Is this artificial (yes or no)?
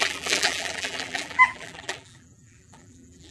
yes